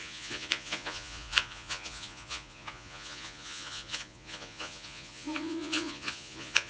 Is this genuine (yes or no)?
no